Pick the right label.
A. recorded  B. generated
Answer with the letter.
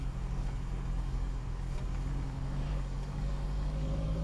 B